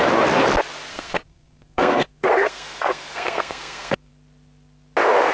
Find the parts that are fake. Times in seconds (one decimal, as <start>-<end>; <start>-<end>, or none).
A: 0.9-4.1